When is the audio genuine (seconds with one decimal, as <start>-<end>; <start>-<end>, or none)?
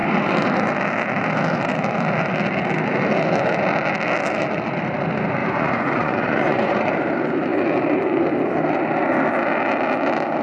0.0-5.4; 6.9-10.4